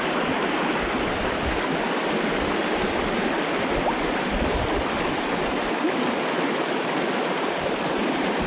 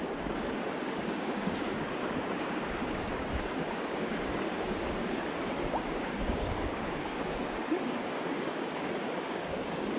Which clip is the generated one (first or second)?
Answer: second